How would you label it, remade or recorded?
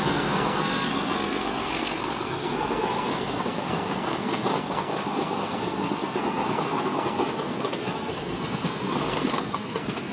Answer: remade